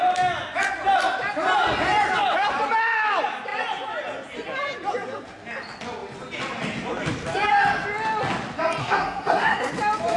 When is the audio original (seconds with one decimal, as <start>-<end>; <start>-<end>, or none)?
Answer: 0.0-8.8; 9.7-10.2